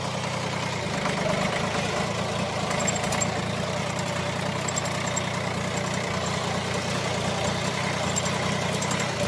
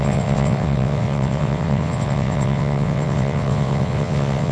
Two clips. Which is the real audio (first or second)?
first